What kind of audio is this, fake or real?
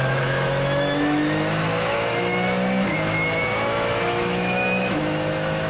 fake